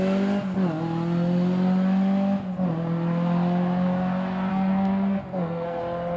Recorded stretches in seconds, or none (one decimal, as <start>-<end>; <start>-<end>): 0.0-4.5; 5.8-6.2